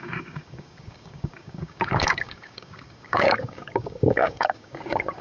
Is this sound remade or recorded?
remade